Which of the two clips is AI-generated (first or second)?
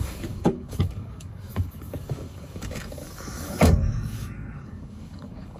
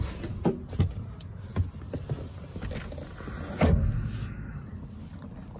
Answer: first